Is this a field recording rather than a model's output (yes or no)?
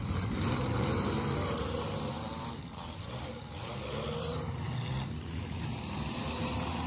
no